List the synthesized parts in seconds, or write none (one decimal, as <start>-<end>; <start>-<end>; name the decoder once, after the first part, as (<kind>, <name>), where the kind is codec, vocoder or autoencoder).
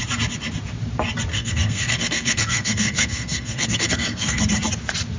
1.3-4.4 (codec, SNAC)